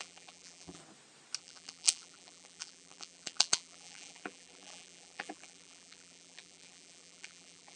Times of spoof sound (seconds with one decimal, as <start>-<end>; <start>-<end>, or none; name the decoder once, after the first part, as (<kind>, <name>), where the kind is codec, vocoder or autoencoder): 0.0-0.8 (vocoder, BigVGAN v2); 1.4-7.8